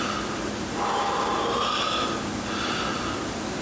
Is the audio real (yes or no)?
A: yes